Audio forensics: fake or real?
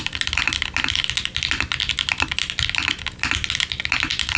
real